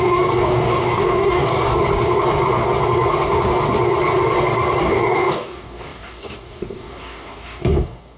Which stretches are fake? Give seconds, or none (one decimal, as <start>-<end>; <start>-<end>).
0.0-1.8; 4.8-8.2